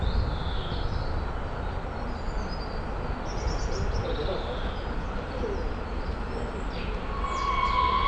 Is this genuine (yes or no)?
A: yes